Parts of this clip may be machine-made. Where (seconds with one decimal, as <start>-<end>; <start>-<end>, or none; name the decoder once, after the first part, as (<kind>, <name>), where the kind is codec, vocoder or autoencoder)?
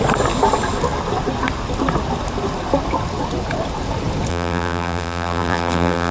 4.3-6.1 (vocoder, BigVGAN v2)